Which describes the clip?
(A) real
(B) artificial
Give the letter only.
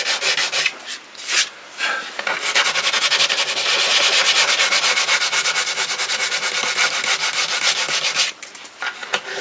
A